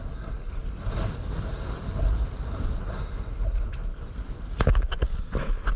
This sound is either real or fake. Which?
real